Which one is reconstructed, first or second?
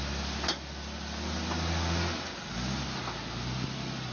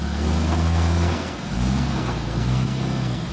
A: second